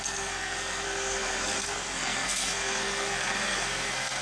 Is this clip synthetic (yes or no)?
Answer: yes